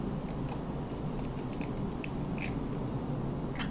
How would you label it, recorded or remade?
recorded